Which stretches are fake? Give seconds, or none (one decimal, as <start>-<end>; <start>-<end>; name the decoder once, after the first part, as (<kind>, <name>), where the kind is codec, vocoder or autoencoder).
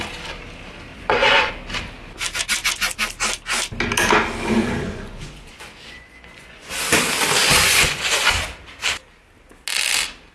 0.9-1.5 (vocoder, Vocos); 4.6-6.7; 7.4-8.2